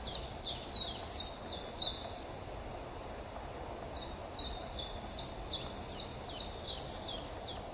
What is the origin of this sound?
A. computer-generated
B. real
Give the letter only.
B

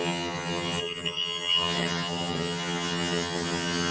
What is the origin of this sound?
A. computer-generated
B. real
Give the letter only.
A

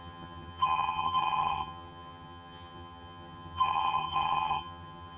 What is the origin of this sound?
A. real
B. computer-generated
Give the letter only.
B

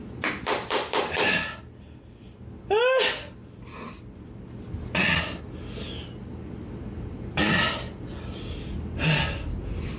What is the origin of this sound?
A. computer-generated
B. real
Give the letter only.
B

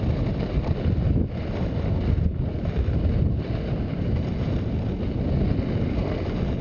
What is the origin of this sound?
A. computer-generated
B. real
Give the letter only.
B